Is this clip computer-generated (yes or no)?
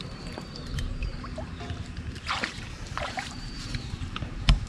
yes